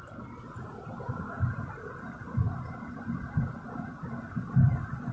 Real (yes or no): yes